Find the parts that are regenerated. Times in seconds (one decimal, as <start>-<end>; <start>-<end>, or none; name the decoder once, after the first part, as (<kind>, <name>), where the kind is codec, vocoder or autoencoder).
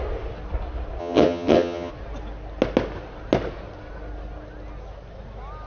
1.0-1.9 (vocoder, HiFi-GAN)